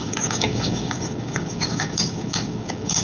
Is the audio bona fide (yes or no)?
no